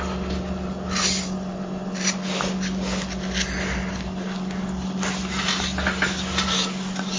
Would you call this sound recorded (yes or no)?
yes